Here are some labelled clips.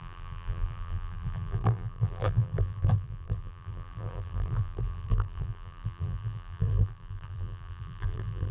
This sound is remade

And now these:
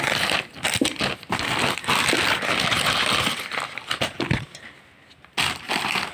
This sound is recorded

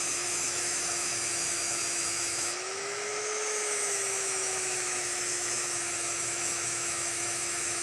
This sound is remade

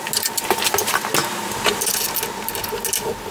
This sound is recorded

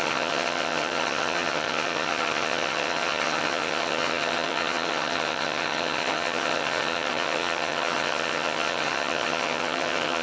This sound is remade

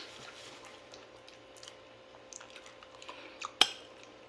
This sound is recorded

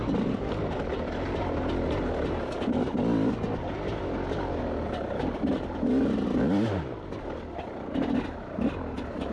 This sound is recorded